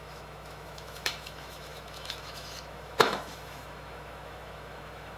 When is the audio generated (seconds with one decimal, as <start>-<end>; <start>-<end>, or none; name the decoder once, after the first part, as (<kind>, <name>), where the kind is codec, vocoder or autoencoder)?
0.0-5.2 (autoencoder, DAC-VAE)